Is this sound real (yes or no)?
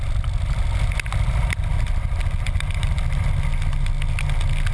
yes